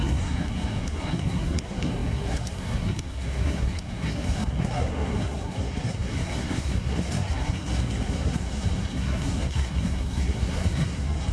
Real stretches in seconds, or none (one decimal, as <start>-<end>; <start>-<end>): none